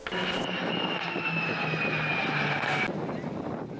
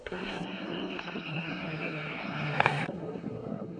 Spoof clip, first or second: second